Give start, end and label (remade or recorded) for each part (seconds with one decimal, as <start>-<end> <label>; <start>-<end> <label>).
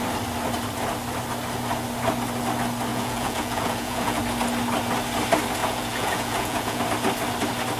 0.0-2.9 recorded; 2.9-4.2 remade; 4.2-5.6 recorded; 5.6-6.8 remade; 6.8-7.8 recorded